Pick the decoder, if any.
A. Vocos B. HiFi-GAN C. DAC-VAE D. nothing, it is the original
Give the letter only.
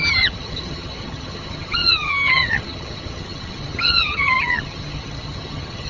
B